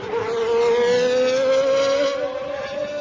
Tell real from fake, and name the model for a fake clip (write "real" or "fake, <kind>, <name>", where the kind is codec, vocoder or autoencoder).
real